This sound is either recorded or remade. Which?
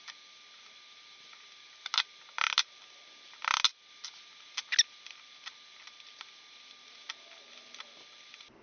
recorded